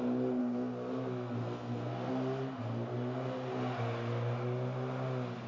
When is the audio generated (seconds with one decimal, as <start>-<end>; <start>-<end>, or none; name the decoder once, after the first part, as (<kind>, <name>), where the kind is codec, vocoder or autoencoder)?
0.4-2.1 (codec, SNAC)